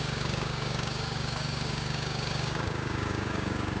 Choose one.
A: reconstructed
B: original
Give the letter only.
A